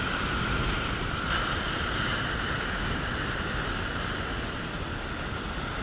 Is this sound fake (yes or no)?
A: no